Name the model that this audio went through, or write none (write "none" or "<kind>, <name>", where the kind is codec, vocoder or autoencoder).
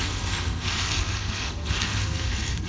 codec, SNAC